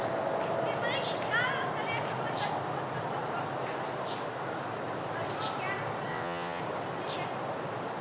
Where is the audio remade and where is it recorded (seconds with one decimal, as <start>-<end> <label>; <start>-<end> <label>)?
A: 0.0-6.1 recorded; 6.1-6.6 remade; 6.6-8.0 recorded

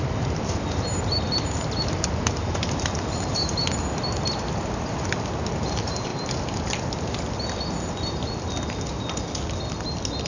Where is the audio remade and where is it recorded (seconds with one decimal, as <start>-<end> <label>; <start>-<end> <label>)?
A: 0.0-3.6 remade; 3.6-5.5 recorded; 5.5-6.1 remade; 6.1-10.3 recorded

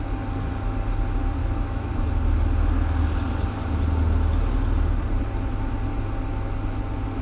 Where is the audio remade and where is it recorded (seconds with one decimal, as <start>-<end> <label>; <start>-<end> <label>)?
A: 0.0-1.4 recorded; 1.4-1.9 remade; 1.9-7.2 recorded

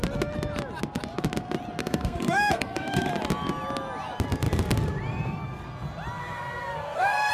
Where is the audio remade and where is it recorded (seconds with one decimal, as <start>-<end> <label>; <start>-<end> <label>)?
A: 0.0-1.8 recorded; 1.8-3.1 remade; 3.1-6.2 recorded; 6.2-7.3 remade

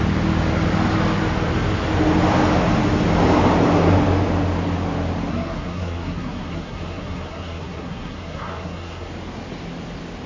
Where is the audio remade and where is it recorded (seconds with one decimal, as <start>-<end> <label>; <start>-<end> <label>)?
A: 0.0-5.3 recorded; 5.3-9.1 remade; 9.1-10.3 recorded

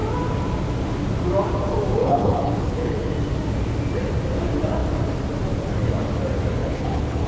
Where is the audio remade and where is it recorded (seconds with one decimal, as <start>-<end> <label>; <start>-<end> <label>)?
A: 0.0-2.0 recorded; 2.0-3.1 remade; 3.1-6.6 recorded; 6.6-7.3 remade